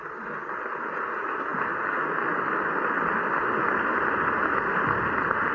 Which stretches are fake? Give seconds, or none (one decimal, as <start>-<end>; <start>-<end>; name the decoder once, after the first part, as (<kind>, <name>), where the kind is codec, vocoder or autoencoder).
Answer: none